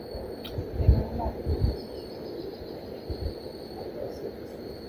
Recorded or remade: recorded